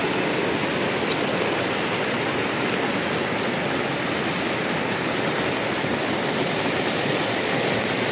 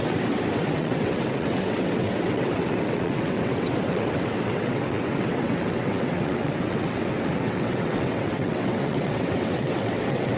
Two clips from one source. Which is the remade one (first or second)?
second